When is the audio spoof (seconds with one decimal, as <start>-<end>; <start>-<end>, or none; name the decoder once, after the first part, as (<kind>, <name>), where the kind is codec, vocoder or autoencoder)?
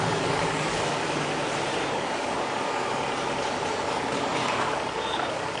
0.0-1.3 (codec, DAC); 1.9-3.0; 3.7-5.6